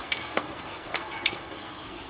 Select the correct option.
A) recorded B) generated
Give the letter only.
B